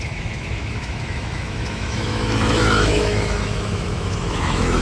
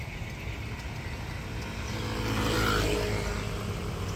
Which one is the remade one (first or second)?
first